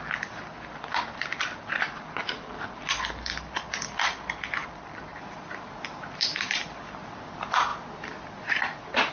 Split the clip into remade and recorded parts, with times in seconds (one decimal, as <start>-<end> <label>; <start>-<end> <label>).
0.0-9.1 recorded